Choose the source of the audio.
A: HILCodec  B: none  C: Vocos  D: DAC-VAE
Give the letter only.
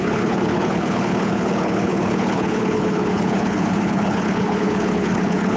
A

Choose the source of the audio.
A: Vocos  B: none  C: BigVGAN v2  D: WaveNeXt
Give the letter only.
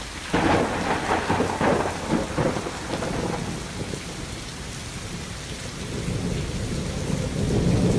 B